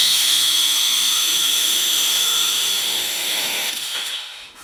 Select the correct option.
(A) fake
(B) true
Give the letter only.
A